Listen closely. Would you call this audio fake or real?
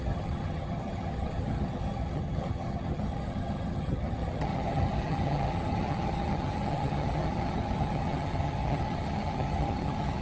fake